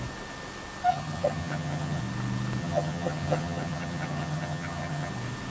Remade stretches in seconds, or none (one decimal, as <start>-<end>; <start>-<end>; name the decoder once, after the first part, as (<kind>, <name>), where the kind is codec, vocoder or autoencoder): 0.9-2.0 (vocoder, HiFi-GAN); 2.6-5.1